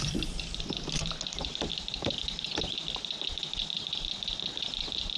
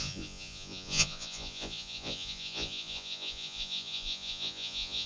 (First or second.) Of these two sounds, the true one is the first